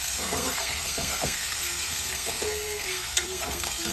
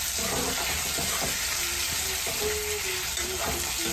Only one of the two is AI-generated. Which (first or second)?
first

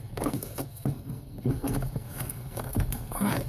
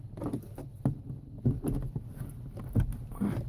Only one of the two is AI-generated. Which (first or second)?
first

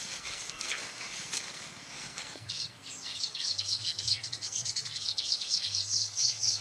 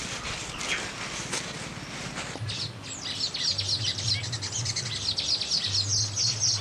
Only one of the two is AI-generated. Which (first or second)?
first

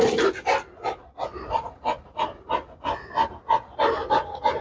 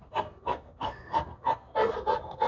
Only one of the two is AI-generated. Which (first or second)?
second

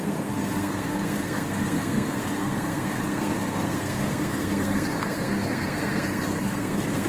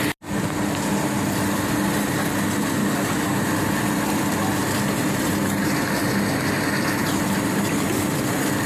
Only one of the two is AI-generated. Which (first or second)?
first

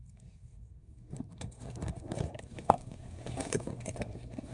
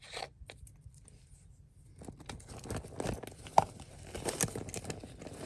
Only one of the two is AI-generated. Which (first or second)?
first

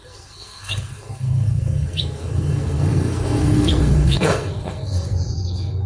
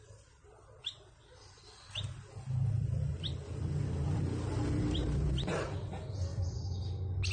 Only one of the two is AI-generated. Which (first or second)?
first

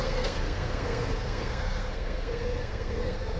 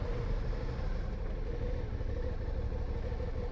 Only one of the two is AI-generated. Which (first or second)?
first